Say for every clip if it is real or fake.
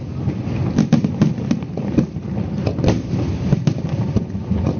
real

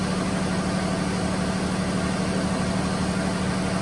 real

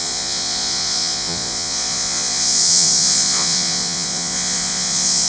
fake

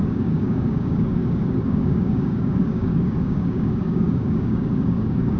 fake